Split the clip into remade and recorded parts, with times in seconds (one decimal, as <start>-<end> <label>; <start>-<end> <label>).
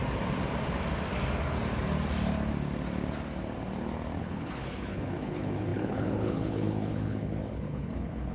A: 0.0-4.2 recorded; 4.2-8.3 remade